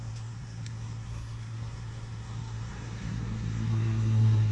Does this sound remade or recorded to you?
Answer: remade